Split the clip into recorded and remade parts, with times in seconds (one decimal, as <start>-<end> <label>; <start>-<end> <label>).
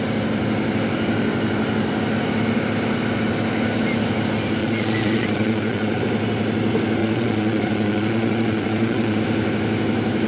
0.0-4.6 recorded; 4.6-6.0 remade; 6.0-7.0 recorded; 7.0-9.2 remade; 9.2-10.3 recorded